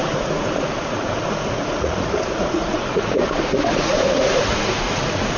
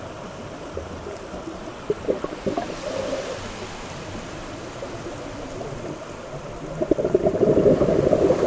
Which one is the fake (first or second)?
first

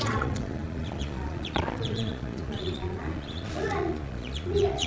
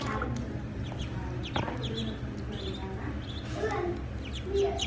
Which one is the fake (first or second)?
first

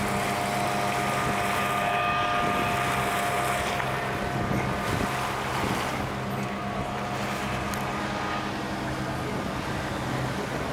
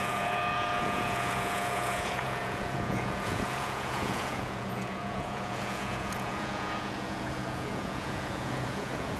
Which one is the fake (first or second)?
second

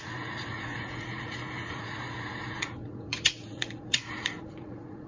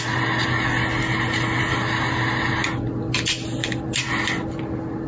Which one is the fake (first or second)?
first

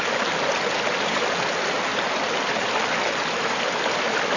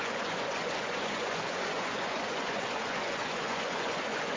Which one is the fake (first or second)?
second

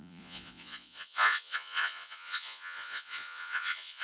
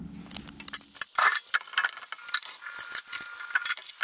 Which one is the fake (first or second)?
first